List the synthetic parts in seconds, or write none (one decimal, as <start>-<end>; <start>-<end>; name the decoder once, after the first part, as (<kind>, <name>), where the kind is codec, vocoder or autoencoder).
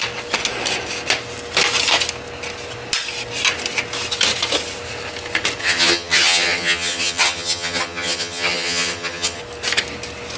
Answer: 5.6-9.4 (vocoder, HiFi-GAN)